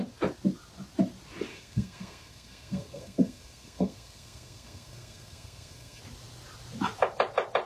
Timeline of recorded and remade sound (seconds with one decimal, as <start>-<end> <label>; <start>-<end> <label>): 0.0-1.5 recorded; 1.5-6.0 remade; 6.0-7.7 recorded